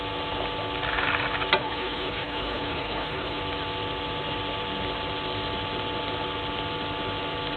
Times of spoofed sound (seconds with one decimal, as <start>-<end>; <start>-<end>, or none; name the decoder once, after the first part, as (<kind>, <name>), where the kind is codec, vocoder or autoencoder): 1.6-3.4 (codec, HILCodec)